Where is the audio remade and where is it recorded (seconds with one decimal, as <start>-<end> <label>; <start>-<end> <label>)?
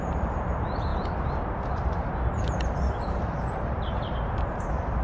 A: 0.0-5.0 remade